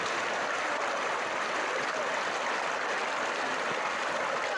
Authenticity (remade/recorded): recorded